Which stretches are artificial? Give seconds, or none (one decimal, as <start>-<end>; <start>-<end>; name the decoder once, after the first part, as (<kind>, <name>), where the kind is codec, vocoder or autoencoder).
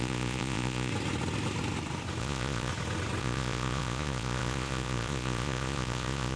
0.0-0.9 (vocoder, Vocos); 2.2-2.7; 3.2-6.4